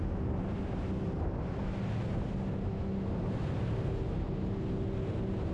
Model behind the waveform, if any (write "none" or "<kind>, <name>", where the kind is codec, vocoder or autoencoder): none